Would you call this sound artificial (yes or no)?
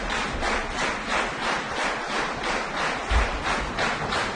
yes